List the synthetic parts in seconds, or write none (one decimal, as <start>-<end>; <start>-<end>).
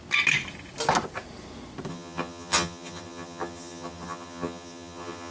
1.9-5.3